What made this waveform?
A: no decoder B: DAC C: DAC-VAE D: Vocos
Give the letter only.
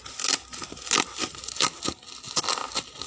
A